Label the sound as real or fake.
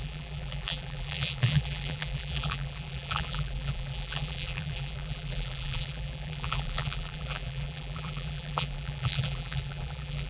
fake